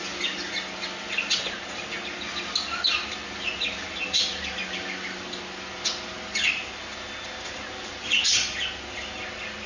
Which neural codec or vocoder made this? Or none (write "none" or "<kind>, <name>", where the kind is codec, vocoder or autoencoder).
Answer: none